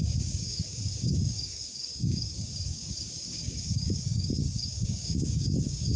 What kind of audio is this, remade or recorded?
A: remade